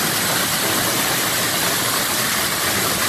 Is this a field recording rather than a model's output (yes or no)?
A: yes